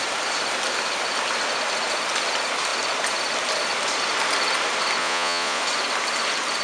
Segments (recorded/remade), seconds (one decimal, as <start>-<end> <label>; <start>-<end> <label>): 0.0-5.0 recorded; 5.0-5.6 remade; 5.6-6.6 recorded